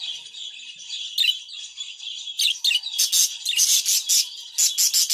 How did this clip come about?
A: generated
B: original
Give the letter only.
B